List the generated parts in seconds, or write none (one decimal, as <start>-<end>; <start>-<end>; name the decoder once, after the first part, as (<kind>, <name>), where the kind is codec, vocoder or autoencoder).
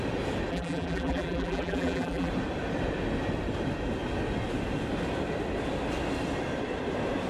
0.5-2.3 (vocoder, BigVGAN v2)